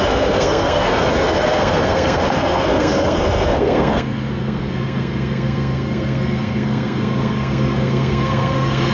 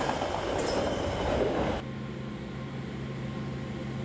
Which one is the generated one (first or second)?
first